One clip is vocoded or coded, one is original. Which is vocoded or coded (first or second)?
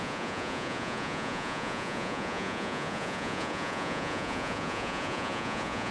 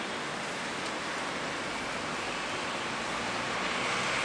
first